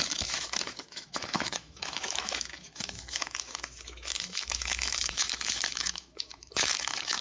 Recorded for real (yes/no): no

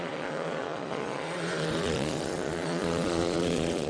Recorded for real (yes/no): no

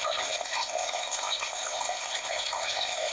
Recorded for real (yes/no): no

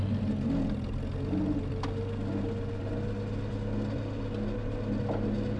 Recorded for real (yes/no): yes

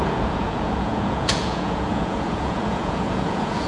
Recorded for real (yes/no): no